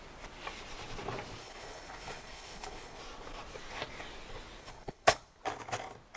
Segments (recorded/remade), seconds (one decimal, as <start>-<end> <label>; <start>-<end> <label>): 0.0-1.4 recorded; 1.4-3.0 remade; 3.0-4.6 recorded; 4.6-5.4 remade; 5.4-6.2 recorded